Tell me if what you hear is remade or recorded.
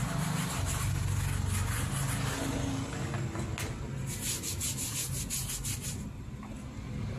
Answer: recorded